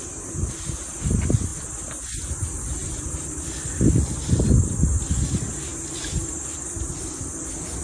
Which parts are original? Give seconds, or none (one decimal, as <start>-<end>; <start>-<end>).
0.0-7.8